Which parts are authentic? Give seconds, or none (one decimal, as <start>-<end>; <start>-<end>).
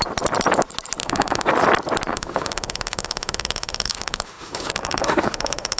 0.0-1.0; 1.5-2.1